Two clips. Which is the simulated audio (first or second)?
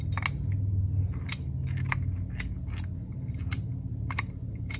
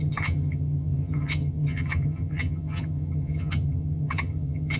second